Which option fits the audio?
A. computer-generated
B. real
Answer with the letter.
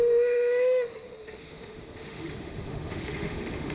A